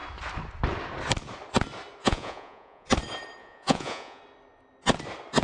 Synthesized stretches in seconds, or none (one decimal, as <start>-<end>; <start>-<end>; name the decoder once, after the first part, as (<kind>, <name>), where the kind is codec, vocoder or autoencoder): 2.0-2.9 (vocoder, Vocos); 3.4-4.2